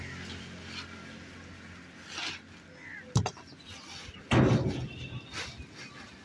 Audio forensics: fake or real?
real